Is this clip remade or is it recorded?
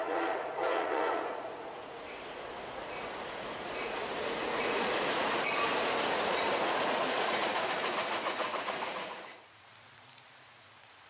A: remade